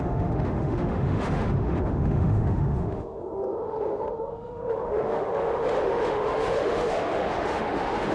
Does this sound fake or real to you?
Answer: fake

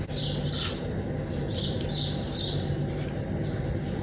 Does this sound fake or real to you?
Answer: real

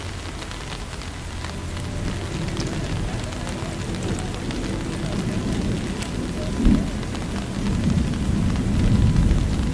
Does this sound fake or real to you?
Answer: real